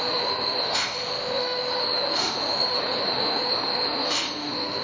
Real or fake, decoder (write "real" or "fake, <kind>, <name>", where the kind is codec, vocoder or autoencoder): fake, autoencoder, DAC-VAE